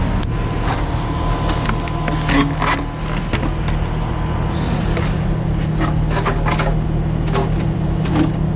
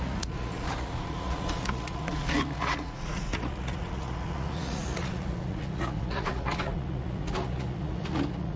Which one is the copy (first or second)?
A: second